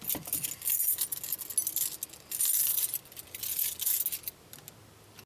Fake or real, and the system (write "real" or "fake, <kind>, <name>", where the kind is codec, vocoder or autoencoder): real